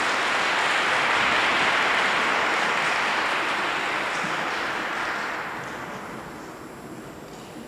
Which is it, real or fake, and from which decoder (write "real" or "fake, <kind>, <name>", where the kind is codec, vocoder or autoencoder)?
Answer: real